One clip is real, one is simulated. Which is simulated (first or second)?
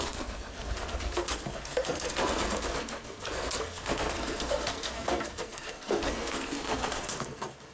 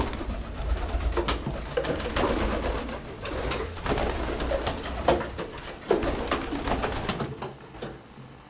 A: first